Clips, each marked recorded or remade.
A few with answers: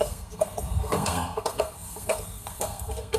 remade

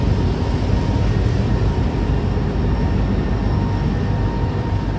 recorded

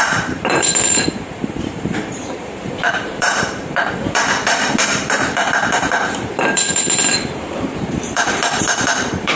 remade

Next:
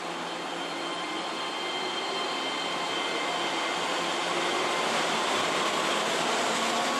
recorded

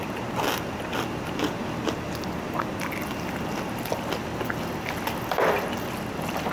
recorded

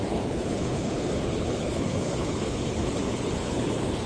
remade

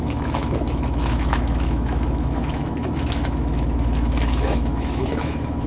remade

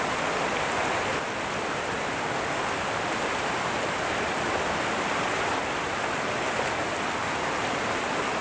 recorded